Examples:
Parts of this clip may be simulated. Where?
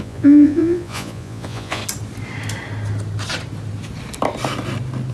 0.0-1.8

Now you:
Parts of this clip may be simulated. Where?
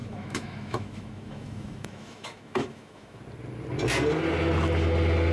0.0-3.2